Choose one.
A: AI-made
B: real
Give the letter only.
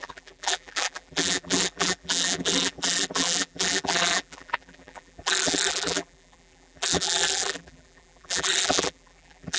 A